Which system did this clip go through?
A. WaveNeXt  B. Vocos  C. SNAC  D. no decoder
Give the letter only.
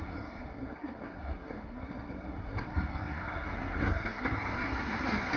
C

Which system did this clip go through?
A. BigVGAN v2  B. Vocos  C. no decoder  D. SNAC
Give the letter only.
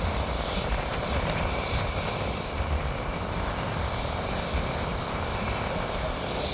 C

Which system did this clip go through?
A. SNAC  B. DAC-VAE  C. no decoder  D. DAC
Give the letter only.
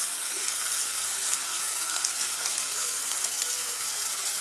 A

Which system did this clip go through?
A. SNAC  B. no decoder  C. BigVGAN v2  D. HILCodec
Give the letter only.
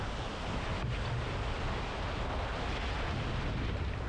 B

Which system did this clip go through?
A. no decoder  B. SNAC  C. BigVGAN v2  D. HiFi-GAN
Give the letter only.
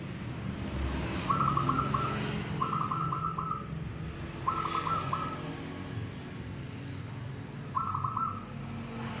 A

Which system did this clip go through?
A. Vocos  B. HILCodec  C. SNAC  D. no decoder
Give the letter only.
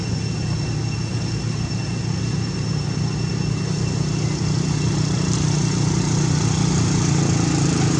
D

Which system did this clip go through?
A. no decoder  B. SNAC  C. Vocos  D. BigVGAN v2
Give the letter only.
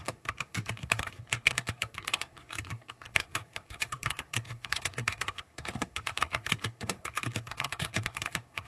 B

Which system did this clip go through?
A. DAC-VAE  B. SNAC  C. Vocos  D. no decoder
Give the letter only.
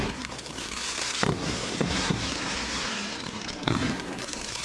B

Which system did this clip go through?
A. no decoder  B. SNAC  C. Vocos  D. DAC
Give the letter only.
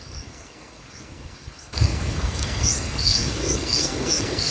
B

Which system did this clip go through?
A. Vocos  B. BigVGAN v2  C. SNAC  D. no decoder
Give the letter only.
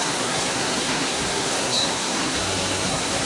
C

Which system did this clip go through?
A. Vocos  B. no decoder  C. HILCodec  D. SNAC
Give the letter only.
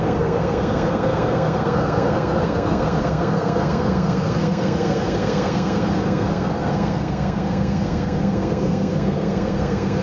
D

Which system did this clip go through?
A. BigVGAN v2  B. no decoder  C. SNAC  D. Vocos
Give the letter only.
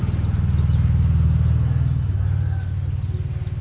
B